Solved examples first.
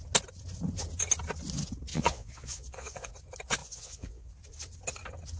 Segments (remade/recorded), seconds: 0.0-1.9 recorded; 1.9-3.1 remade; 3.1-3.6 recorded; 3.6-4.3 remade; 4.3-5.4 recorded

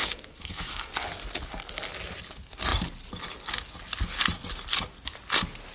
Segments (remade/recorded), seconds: 0.0-0.9 remade; 0.9-5.7 recorded